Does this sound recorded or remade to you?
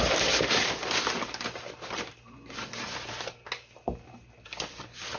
recorded